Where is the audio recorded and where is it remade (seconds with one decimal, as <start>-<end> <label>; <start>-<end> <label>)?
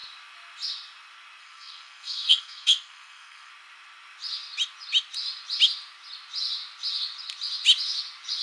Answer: 0.0-1.4 recorded; 1.4-3.5 remade; 3.5-8.4 recorded